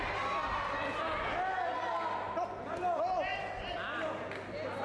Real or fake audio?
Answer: real